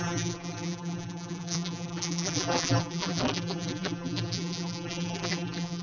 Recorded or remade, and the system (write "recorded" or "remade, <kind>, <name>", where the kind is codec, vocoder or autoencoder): remade, vocoder, BigVGAN v2